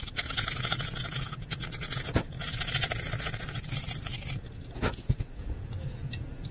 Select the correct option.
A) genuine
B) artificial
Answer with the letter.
B